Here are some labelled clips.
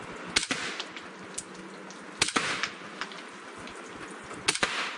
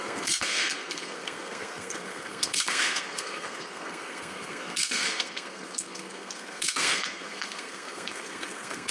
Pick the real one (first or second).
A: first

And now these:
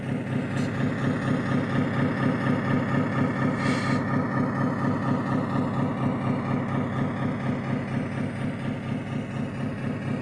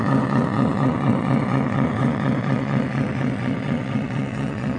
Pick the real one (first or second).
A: first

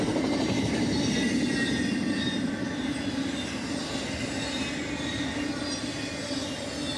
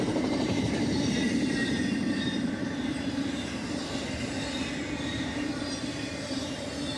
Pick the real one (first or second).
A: first